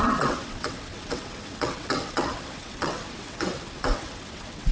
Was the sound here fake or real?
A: fake